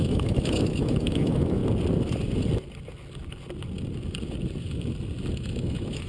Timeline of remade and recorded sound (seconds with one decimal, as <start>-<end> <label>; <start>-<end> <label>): 0.0-1.6 remade; 1.6-5.3 recorded; 5.3-6.1 remade